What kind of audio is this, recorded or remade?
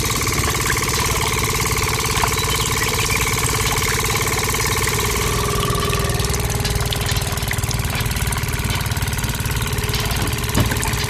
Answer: recorded